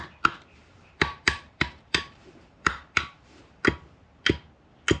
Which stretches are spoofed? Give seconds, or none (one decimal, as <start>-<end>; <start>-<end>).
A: 0.6-3.6